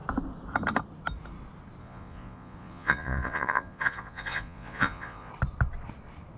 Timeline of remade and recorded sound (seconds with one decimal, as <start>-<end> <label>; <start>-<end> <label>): 0.0-1.8 recorded; 1.8-5.3 remade; 5.3-6.4 recorded